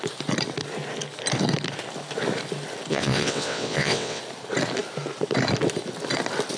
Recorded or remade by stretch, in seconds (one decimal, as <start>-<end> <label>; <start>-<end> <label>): 0.0-2.9 recorded; 2.9-4.2 remade; 4.2-6.6 recorded